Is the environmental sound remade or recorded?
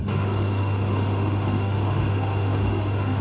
remade